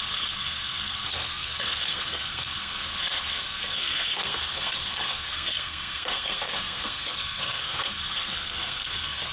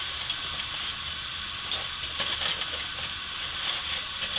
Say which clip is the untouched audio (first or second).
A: second